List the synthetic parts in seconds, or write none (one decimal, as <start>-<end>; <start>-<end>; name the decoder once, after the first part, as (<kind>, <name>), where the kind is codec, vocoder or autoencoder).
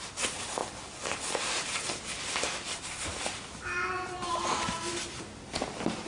none